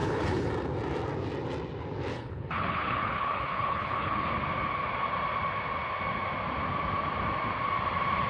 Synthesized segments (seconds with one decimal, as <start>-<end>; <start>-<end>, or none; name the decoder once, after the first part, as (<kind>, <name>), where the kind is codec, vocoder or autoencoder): 0.0-0.5 (codec, HILCodec); 2.1-4.3